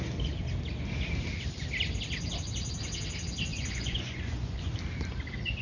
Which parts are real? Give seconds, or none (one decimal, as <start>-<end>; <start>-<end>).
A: 0.0-3.5; 4.7-5.6